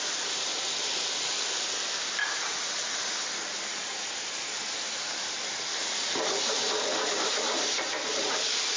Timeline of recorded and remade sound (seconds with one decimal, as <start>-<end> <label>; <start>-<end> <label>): 0.0-0.5 remade; 0.5-2.0 recorded; 2.0-8.8 remade